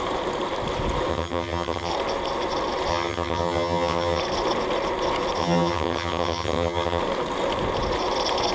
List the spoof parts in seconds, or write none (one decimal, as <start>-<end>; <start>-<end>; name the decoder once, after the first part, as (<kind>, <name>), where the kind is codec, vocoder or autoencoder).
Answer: 1.1-1.9 (vocoder, HiFi-GAN); 2.9-4.2; 5.4-7.0